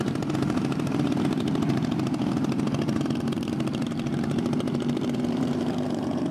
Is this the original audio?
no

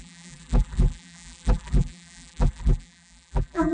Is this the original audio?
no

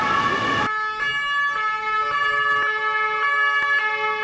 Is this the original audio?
yes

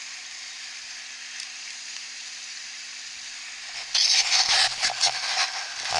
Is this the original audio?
yes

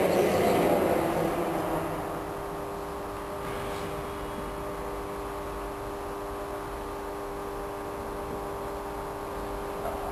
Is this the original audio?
yes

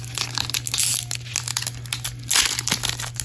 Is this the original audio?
yes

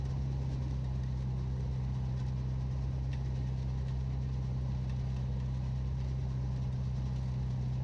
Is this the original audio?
yes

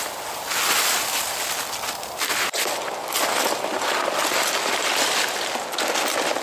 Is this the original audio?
yes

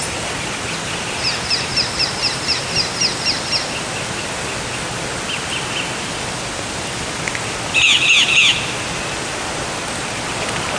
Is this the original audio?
yes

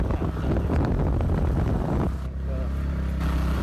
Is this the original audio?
yes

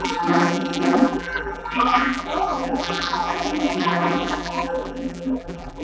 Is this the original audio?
no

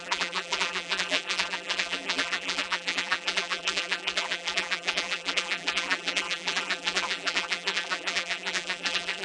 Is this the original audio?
no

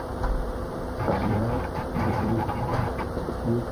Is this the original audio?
no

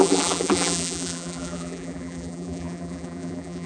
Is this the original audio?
no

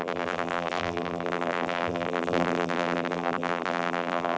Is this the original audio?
no